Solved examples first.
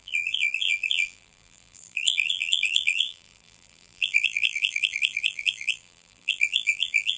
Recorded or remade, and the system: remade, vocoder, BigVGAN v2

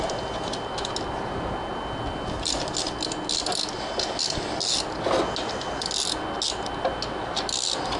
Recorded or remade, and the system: recorded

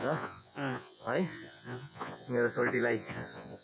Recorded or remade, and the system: remade, vocoder, Vocos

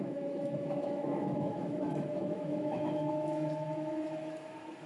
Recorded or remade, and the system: remade, autoencoder, DAC-VAE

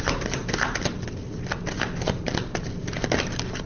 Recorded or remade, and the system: recorded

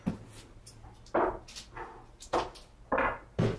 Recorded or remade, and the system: recorded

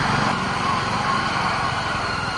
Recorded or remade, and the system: recorded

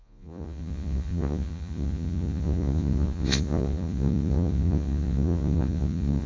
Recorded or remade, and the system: remade, vocoder, Vocos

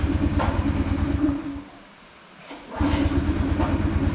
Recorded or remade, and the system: recorded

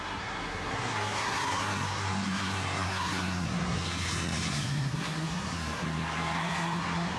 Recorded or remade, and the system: remade, codec, SNAC